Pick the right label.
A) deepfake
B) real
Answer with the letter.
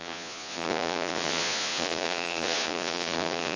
A